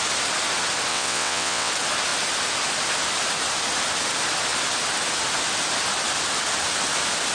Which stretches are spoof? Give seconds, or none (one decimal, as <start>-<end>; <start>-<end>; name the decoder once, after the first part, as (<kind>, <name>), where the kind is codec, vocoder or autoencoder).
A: 0.9-1.7 (vocoder, WaveNeXt)